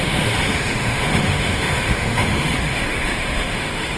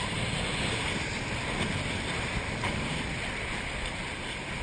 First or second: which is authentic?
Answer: second